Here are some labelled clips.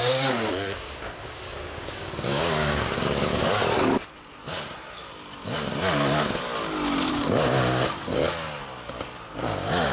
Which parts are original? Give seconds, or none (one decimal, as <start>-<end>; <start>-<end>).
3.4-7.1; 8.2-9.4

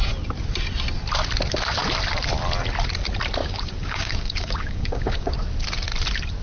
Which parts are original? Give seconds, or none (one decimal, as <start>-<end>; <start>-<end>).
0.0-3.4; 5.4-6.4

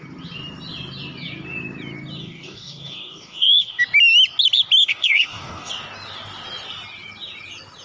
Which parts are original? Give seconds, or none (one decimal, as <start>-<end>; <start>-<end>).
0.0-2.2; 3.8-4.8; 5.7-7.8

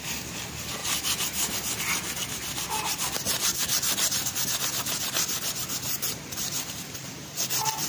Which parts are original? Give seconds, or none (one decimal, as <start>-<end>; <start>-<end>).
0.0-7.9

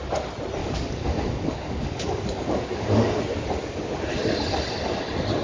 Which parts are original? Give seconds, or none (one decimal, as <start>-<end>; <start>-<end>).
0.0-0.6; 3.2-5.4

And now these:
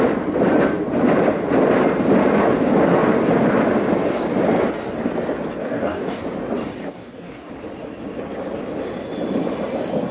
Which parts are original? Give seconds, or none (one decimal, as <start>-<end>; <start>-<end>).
0.0-5.6; 6.2-6.8; 7.5-10.1